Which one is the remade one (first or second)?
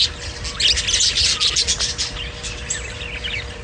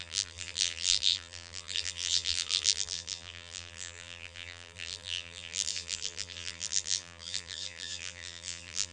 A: second